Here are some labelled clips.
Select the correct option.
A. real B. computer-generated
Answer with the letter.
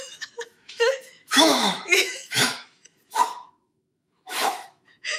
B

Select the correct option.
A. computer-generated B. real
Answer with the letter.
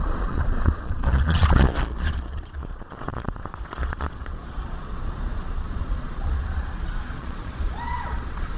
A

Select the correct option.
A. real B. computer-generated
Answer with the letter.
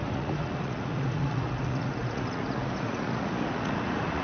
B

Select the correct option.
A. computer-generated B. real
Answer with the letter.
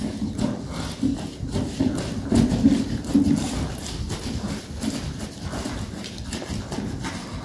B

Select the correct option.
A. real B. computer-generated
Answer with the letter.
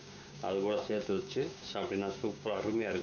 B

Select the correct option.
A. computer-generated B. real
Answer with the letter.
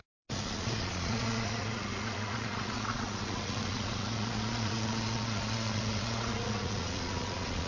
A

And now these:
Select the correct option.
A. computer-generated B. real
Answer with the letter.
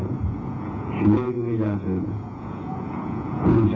A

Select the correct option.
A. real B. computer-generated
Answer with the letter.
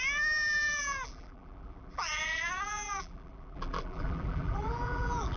B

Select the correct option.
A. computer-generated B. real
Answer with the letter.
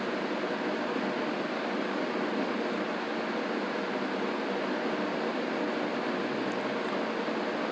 B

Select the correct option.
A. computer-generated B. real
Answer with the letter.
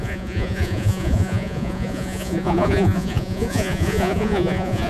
A